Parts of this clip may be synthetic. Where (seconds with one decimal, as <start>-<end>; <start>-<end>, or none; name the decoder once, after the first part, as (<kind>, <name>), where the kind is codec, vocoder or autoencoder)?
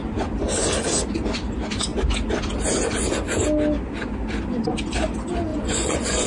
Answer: 5.5-6.3 (vocoder, Vocos)